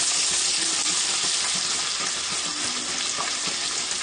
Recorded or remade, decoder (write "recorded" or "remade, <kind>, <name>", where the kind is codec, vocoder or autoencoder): recorded